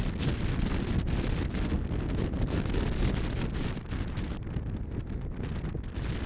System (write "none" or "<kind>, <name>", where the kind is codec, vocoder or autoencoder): none